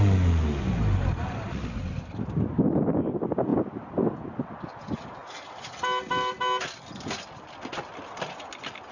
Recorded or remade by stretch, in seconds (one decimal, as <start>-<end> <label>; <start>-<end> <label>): 0.0-8.9 recorded

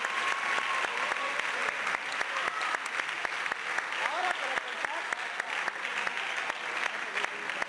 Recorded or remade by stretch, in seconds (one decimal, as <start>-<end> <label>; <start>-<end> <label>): 0.0-7.7 recorded

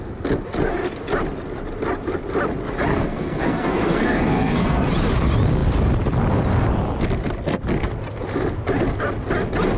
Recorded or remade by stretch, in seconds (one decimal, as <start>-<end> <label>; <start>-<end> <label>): 0.0-2.9 recorded; 2.9-4.9 remade; 4.9-9.8 recorded

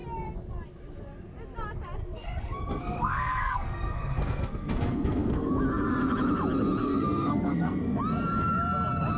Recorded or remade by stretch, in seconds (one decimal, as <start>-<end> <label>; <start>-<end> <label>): 0.0-2.0 recorded; 2.0-5.5 remade; 5.5-6.8 recorded; 6.8-8.0 remade; 8.0-9.2 recorded

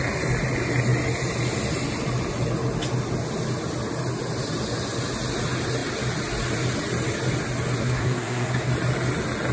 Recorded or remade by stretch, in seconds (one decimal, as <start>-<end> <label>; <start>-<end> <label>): 0.0-7.8 recorded; 7.8-8.7 remade; 8.7-9.5 recorded